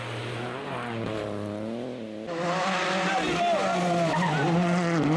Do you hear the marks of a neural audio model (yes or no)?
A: no